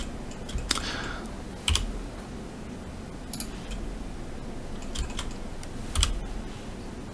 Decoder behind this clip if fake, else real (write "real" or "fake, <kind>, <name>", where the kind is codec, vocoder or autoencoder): real